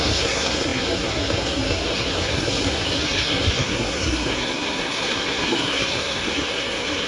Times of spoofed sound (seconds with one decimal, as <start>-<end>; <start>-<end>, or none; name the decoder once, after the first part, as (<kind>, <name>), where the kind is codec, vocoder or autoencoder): 0.0-7.1 (codec, SNAC)